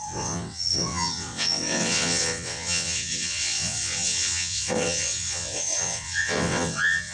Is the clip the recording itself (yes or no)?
no